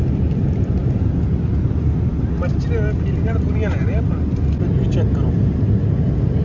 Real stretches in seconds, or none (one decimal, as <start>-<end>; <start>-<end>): 0.0-6.4